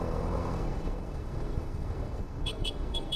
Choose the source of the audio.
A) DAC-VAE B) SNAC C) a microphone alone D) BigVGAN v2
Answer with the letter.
B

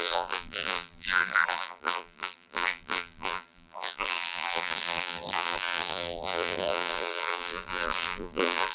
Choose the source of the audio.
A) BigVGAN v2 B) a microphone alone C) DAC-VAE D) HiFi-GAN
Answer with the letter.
A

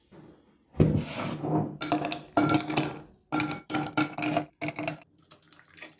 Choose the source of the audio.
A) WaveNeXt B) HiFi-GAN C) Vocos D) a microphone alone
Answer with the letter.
D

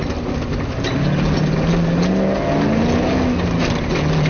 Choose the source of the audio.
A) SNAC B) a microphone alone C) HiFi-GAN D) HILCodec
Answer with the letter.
B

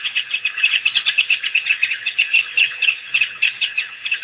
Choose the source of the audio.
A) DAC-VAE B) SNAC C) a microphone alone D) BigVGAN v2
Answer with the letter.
C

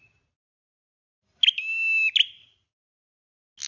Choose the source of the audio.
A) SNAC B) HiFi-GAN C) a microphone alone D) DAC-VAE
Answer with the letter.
C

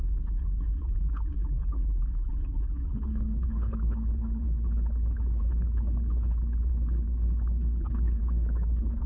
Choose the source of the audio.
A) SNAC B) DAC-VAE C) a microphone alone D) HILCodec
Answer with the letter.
D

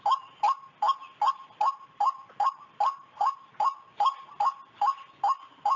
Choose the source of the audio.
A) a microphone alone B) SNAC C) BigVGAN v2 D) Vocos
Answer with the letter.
A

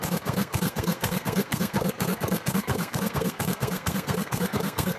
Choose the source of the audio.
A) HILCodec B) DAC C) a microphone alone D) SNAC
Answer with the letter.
D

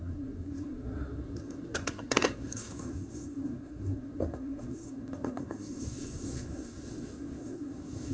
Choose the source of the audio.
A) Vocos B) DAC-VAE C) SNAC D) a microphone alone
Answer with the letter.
C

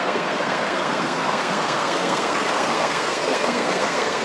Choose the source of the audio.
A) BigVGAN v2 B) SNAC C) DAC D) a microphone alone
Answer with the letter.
B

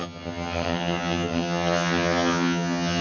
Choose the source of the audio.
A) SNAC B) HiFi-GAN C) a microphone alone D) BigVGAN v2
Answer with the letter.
B